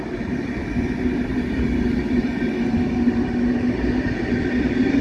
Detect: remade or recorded recorded